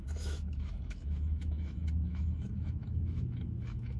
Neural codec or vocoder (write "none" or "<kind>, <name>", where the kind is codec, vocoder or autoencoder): autoencoder, DAC-VAE